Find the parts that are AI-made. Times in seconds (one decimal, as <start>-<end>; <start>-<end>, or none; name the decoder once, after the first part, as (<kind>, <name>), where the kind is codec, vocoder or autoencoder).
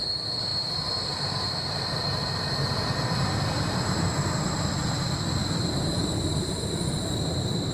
0.0-7.7 (vocoder, BigVGAN v2)